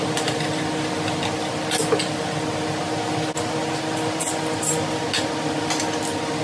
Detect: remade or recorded recorded